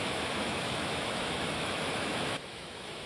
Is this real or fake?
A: fake